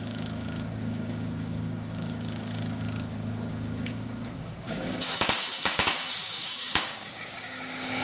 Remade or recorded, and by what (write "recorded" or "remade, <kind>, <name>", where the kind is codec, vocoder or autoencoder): remade, codec, DAC